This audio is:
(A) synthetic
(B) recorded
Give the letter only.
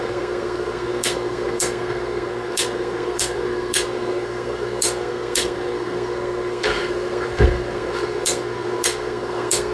A